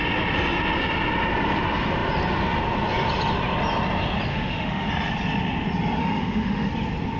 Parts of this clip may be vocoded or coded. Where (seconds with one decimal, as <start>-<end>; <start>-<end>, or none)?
4.3-4.9; 6.0-6.7